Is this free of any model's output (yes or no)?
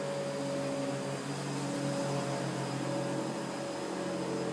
yes